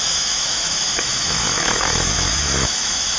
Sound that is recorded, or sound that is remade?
remade